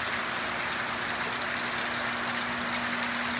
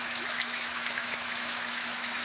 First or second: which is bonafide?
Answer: first